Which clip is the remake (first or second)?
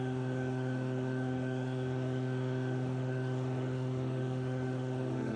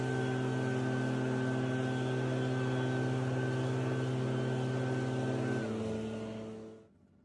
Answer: first